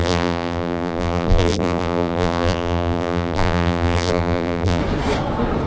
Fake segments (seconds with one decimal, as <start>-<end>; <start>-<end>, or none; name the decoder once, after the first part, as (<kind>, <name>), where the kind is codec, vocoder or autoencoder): 0.0-4.8 (vocoder, BigVGAN v2)